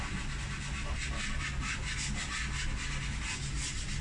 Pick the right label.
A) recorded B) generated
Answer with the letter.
A